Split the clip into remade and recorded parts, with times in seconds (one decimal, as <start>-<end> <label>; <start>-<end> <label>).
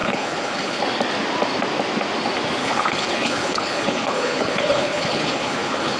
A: 0.0-0.8 remade; 0.8-2.6 recorded; 2.6-6.0 remade